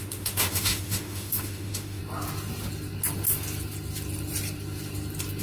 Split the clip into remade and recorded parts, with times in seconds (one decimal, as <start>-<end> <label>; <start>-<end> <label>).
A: 0.0-2.0 remade; 2.0-5.4 recorded